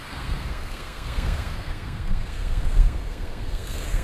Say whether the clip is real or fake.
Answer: fake